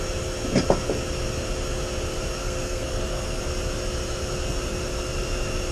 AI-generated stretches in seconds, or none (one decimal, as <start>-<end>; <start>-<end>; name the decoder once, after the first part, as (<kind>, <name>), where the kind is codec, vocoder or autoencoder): 2.4-3.4 (codec, SNAC)